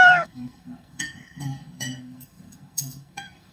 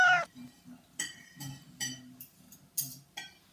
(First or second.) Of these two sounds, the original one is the second